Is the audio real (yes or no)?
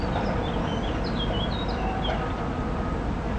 yes